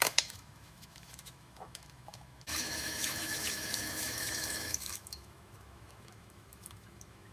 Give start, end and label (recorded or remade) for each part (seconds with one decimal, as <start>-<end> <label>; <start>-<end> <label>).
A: 0.0-7.3 remade